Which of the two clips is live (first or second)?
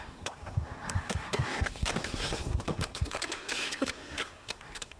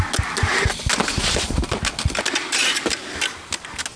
second